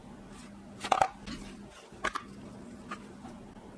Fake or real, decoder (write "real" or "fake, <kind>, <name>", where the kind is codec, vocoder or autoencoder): real